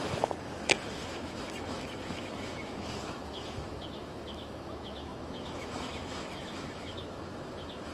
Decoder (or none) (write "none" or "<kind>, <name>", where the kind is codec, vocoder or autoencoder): autoencoder, DAC-VAE